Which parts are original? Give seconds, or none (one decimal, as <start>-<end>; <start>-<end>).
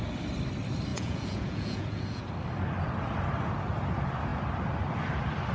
0.0-0.9; 2.3-5.5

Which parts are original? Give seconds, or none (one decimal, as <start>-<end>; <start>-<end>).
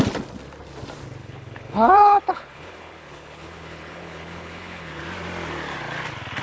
0.0-1.2; 5.0-6.4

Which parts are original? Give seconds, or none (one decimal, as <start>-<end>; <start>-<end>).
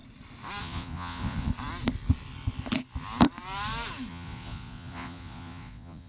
0.0-0.6; 1.5-4.1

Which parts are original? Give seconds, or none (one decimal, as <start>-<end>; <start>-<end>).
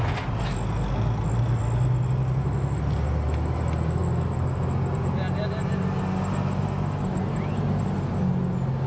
0.0-8.9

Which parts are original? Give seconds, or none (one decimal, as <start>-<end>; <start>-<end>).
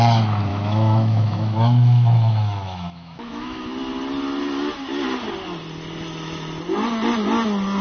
0.0-0.5; 3.6-7.8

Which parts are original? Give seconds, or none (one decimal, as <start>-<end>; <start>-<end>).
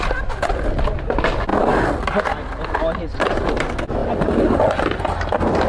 0.0-5.7